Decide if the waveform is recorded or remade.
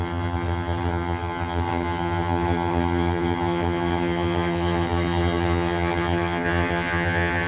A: remade